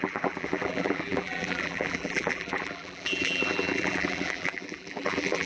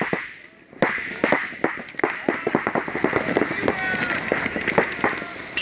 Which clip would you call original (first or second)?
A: second